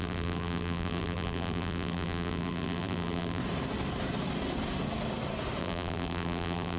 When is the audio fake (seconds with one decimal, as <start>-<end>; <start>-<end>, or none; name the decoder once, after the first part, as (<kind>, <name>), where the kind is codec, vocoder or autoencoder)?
0.0-3.4 (vocoder, BigVGAN v2); 5.6-6.8